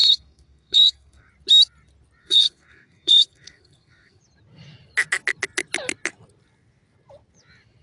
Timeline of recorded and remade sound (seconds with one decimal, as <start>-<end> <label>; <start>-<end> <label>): 0.0-1.3 remade; 1.3-2.2 recorded; 2.2-4.2 remade; 4.2-7.8 recorded